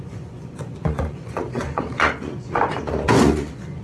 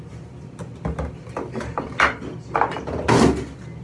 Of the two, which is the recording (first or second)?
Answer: second